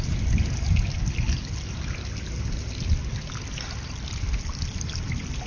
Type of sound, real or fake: real